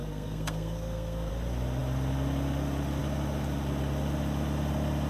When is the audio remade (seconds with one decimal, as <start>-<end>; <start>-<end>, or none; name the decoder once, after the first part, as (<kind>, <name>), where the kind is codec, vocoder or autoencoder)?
0.0-1.3 (codec, SNAC)